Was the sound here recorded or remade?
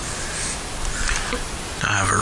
recorded